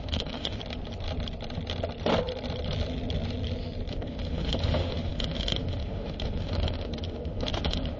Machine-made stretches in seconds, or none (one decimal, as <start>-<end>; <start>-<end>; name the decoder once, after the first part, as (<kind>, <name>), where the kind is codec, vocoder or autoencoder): 0.0-0.6 (autoencoder, DAC-VAE); 3.9-8.0